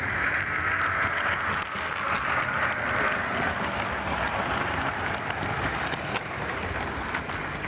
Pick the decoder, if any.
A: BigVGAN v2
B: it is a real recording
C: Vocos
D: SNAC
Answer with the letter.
B